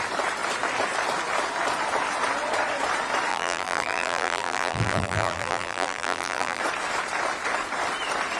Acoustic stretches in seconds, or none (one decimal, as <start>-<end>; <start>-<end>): 0.0-3.3; 6.6-8.4